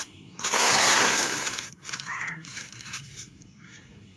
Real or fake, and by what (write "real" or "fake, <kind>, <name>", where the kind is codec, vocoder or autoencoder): fake, codec, SNAC